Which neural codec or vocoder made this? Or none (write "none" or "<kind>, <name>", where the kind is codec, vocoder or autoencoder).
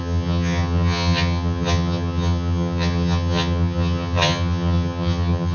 vocoder, HiFi-GAN